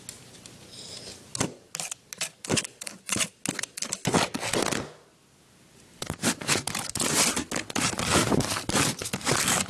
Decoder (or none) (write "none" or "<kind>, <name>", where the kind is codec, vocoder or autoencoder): none